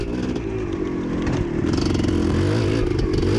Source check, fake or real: real